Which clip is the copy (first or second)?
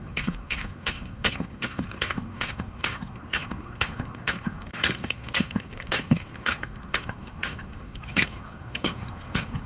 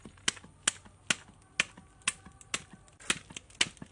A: first